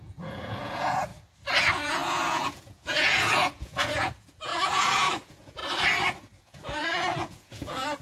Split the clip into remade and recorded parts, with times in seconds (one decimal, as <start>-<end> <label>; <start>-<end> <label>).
0.0-1.1 remade; 1.1-1.6 recorded; 1.6-5.6 remade; 5.6-6.4 recorded; 6.4-8.0 remade